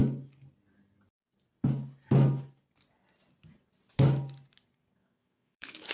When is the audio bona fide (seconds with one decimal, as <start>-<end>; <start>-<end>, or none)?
0.0-5.0